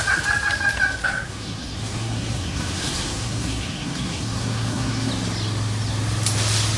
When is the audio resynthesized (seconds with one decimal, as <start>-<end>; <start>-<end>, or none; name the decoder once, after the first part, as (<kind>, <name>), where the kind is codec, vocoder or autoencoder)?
1.0-5.1 (codec, SNAC)